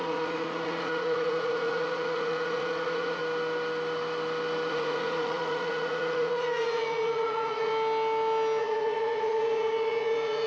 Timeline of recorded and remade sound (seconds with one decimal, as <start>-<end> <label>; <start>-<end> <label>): 0.0-3.2 remade; 3.2-4.7 recorded; 4.7-7.7 remade; 7.7-8.6 recorded; 8.6-10.5 remade